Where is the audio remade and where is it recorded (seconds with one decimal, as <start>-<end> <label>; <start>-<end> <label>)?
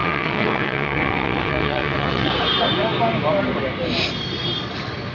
0.0-2.3 remade; 2.3-5.1 recorded